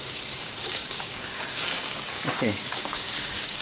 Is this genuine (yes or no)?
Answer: no